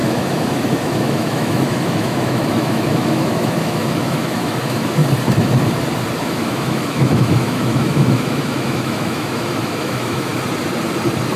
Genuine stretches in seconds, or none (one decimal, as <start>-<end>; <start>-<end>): 5.0-6.2; 10.3-11.4